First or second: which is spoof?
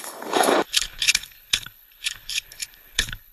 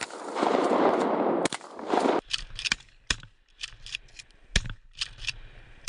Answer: first